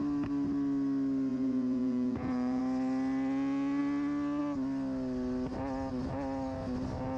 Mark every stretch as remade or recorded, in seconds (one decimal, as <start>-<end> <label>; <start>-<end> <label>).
0.0-1.3 recorded; 1.3-2.6 remade; 2.6-7.2 recorded